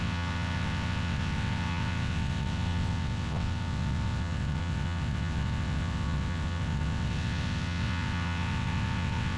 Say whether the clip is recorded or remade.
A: remade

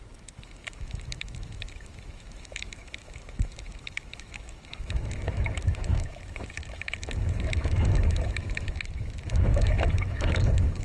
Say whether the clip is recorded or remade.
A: remade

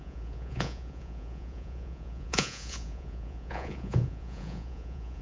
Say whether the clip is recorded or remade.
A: remade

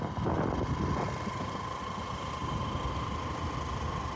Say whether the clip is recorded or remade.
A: recorded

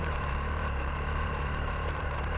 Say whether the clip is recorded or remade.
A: remade